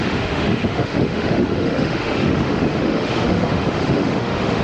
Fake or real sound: fake